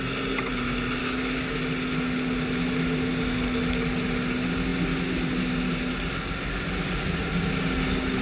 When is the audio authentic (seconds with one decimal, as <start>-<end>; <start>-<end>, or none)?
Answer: 0.0-1.0; 1.6-8.2